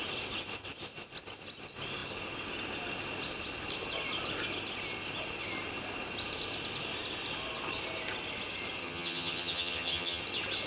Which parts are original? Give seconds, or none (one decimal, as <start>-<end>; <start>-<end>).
0.0-8.8; 10.2-10.7